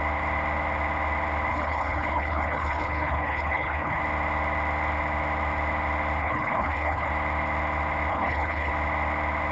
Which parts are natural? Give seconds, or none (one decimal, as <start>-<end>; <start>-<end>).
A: 0.0-1.5; 4.0-6.2; 7.1-8.1; 8.7-9.5